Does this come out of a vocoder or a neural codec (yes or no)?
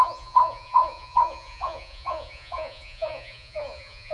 yes